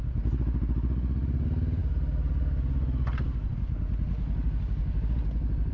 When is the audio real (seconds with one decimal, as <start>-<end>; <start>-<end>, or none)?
0.0-5.7